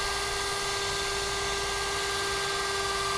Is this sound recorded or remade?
recorded